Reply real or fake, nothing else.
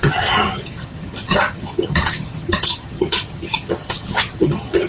fake